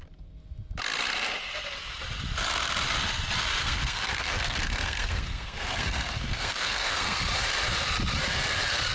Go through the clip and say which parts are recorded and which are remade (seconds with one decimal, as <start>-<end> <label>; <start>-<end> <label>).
0.0-3.6 recorded; 3.6-7.2 remade; 7.2-8.9 recorded